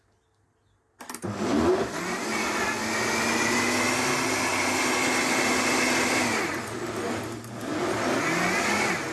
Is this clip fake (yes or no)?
no